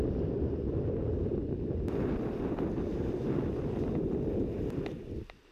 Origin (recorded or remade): recorded